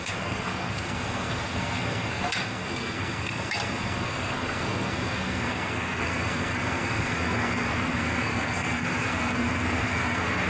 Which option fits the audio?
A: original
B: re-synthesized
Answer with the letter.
B